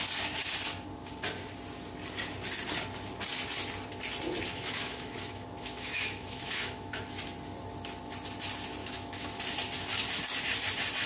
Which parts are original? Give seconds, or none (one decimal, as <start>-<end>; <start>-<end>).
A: 0.0-4.5; 7.0-8.8; 9.4-11.1